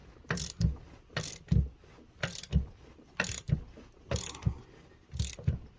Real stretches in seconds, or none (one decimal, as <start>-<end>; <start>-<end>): 0.0-5.8